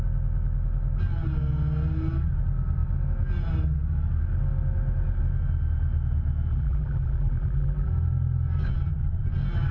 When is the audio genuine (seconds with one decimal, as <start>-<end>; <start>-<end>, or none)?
0.0-6.5; 7.9-9.7